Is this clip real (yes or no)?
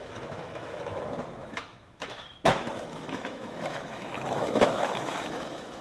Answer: no